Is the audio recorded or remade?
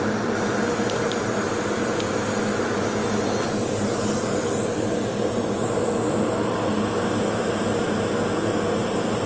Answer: recorded